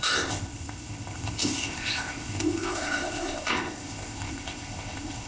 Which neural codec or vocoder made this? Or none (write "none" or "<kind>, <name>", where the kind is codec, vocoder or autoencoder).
codec, ZipCodec